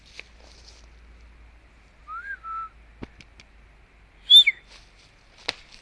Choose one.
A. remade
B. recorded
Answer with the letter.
B